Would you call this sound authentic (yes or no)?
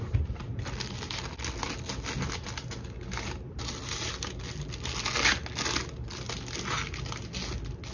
yes